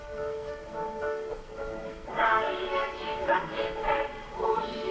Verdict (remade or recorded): remade